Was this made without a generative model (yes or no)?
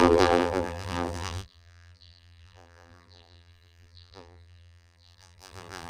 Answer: no